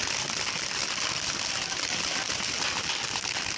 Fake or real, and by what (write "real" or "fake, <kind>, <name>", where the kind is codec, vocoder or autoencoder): real